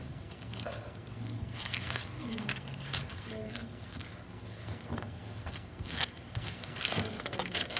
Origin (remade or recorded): remade